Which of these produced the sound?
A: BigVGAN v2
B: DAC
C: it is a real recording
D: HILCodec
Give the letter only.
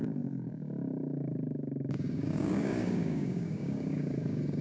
B